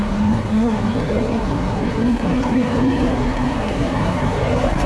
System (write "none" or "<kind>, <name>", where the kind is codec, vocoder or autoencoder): codec, SNAC